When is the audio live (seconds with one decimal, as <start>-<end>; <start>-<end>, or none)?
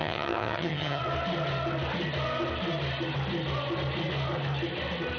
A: 1.0-5.2